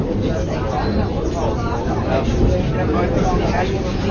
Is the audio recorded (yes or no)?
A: yes